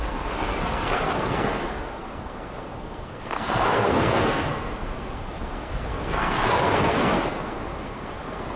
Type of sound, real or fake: fake